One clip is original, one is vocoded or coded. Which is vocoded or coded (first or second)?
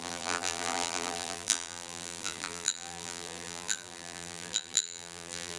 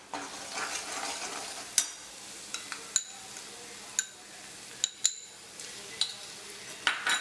first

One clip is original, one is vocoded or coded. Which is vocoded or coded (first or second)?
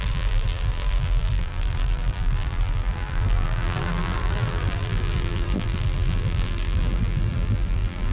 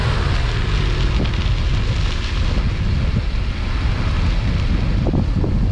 first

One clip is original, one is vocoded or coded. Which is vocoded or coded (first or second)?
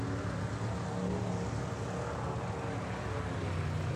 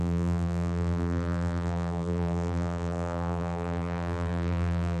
second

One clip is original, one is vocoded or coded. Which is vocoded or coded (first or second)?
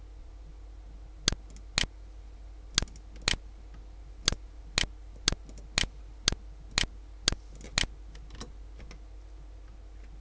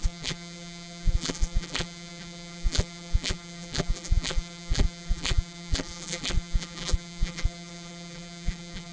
second